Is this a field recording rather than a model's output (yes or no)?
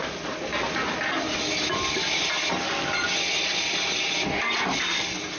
yes